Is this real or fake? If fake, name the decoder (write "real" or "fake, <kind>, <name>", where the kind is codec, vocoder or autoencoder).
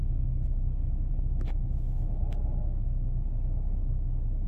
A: real